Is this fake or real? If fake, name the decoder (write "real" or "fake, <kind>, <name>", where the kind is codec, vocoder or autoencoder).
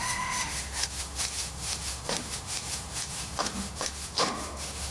fake, autoencoder, DAC-VAE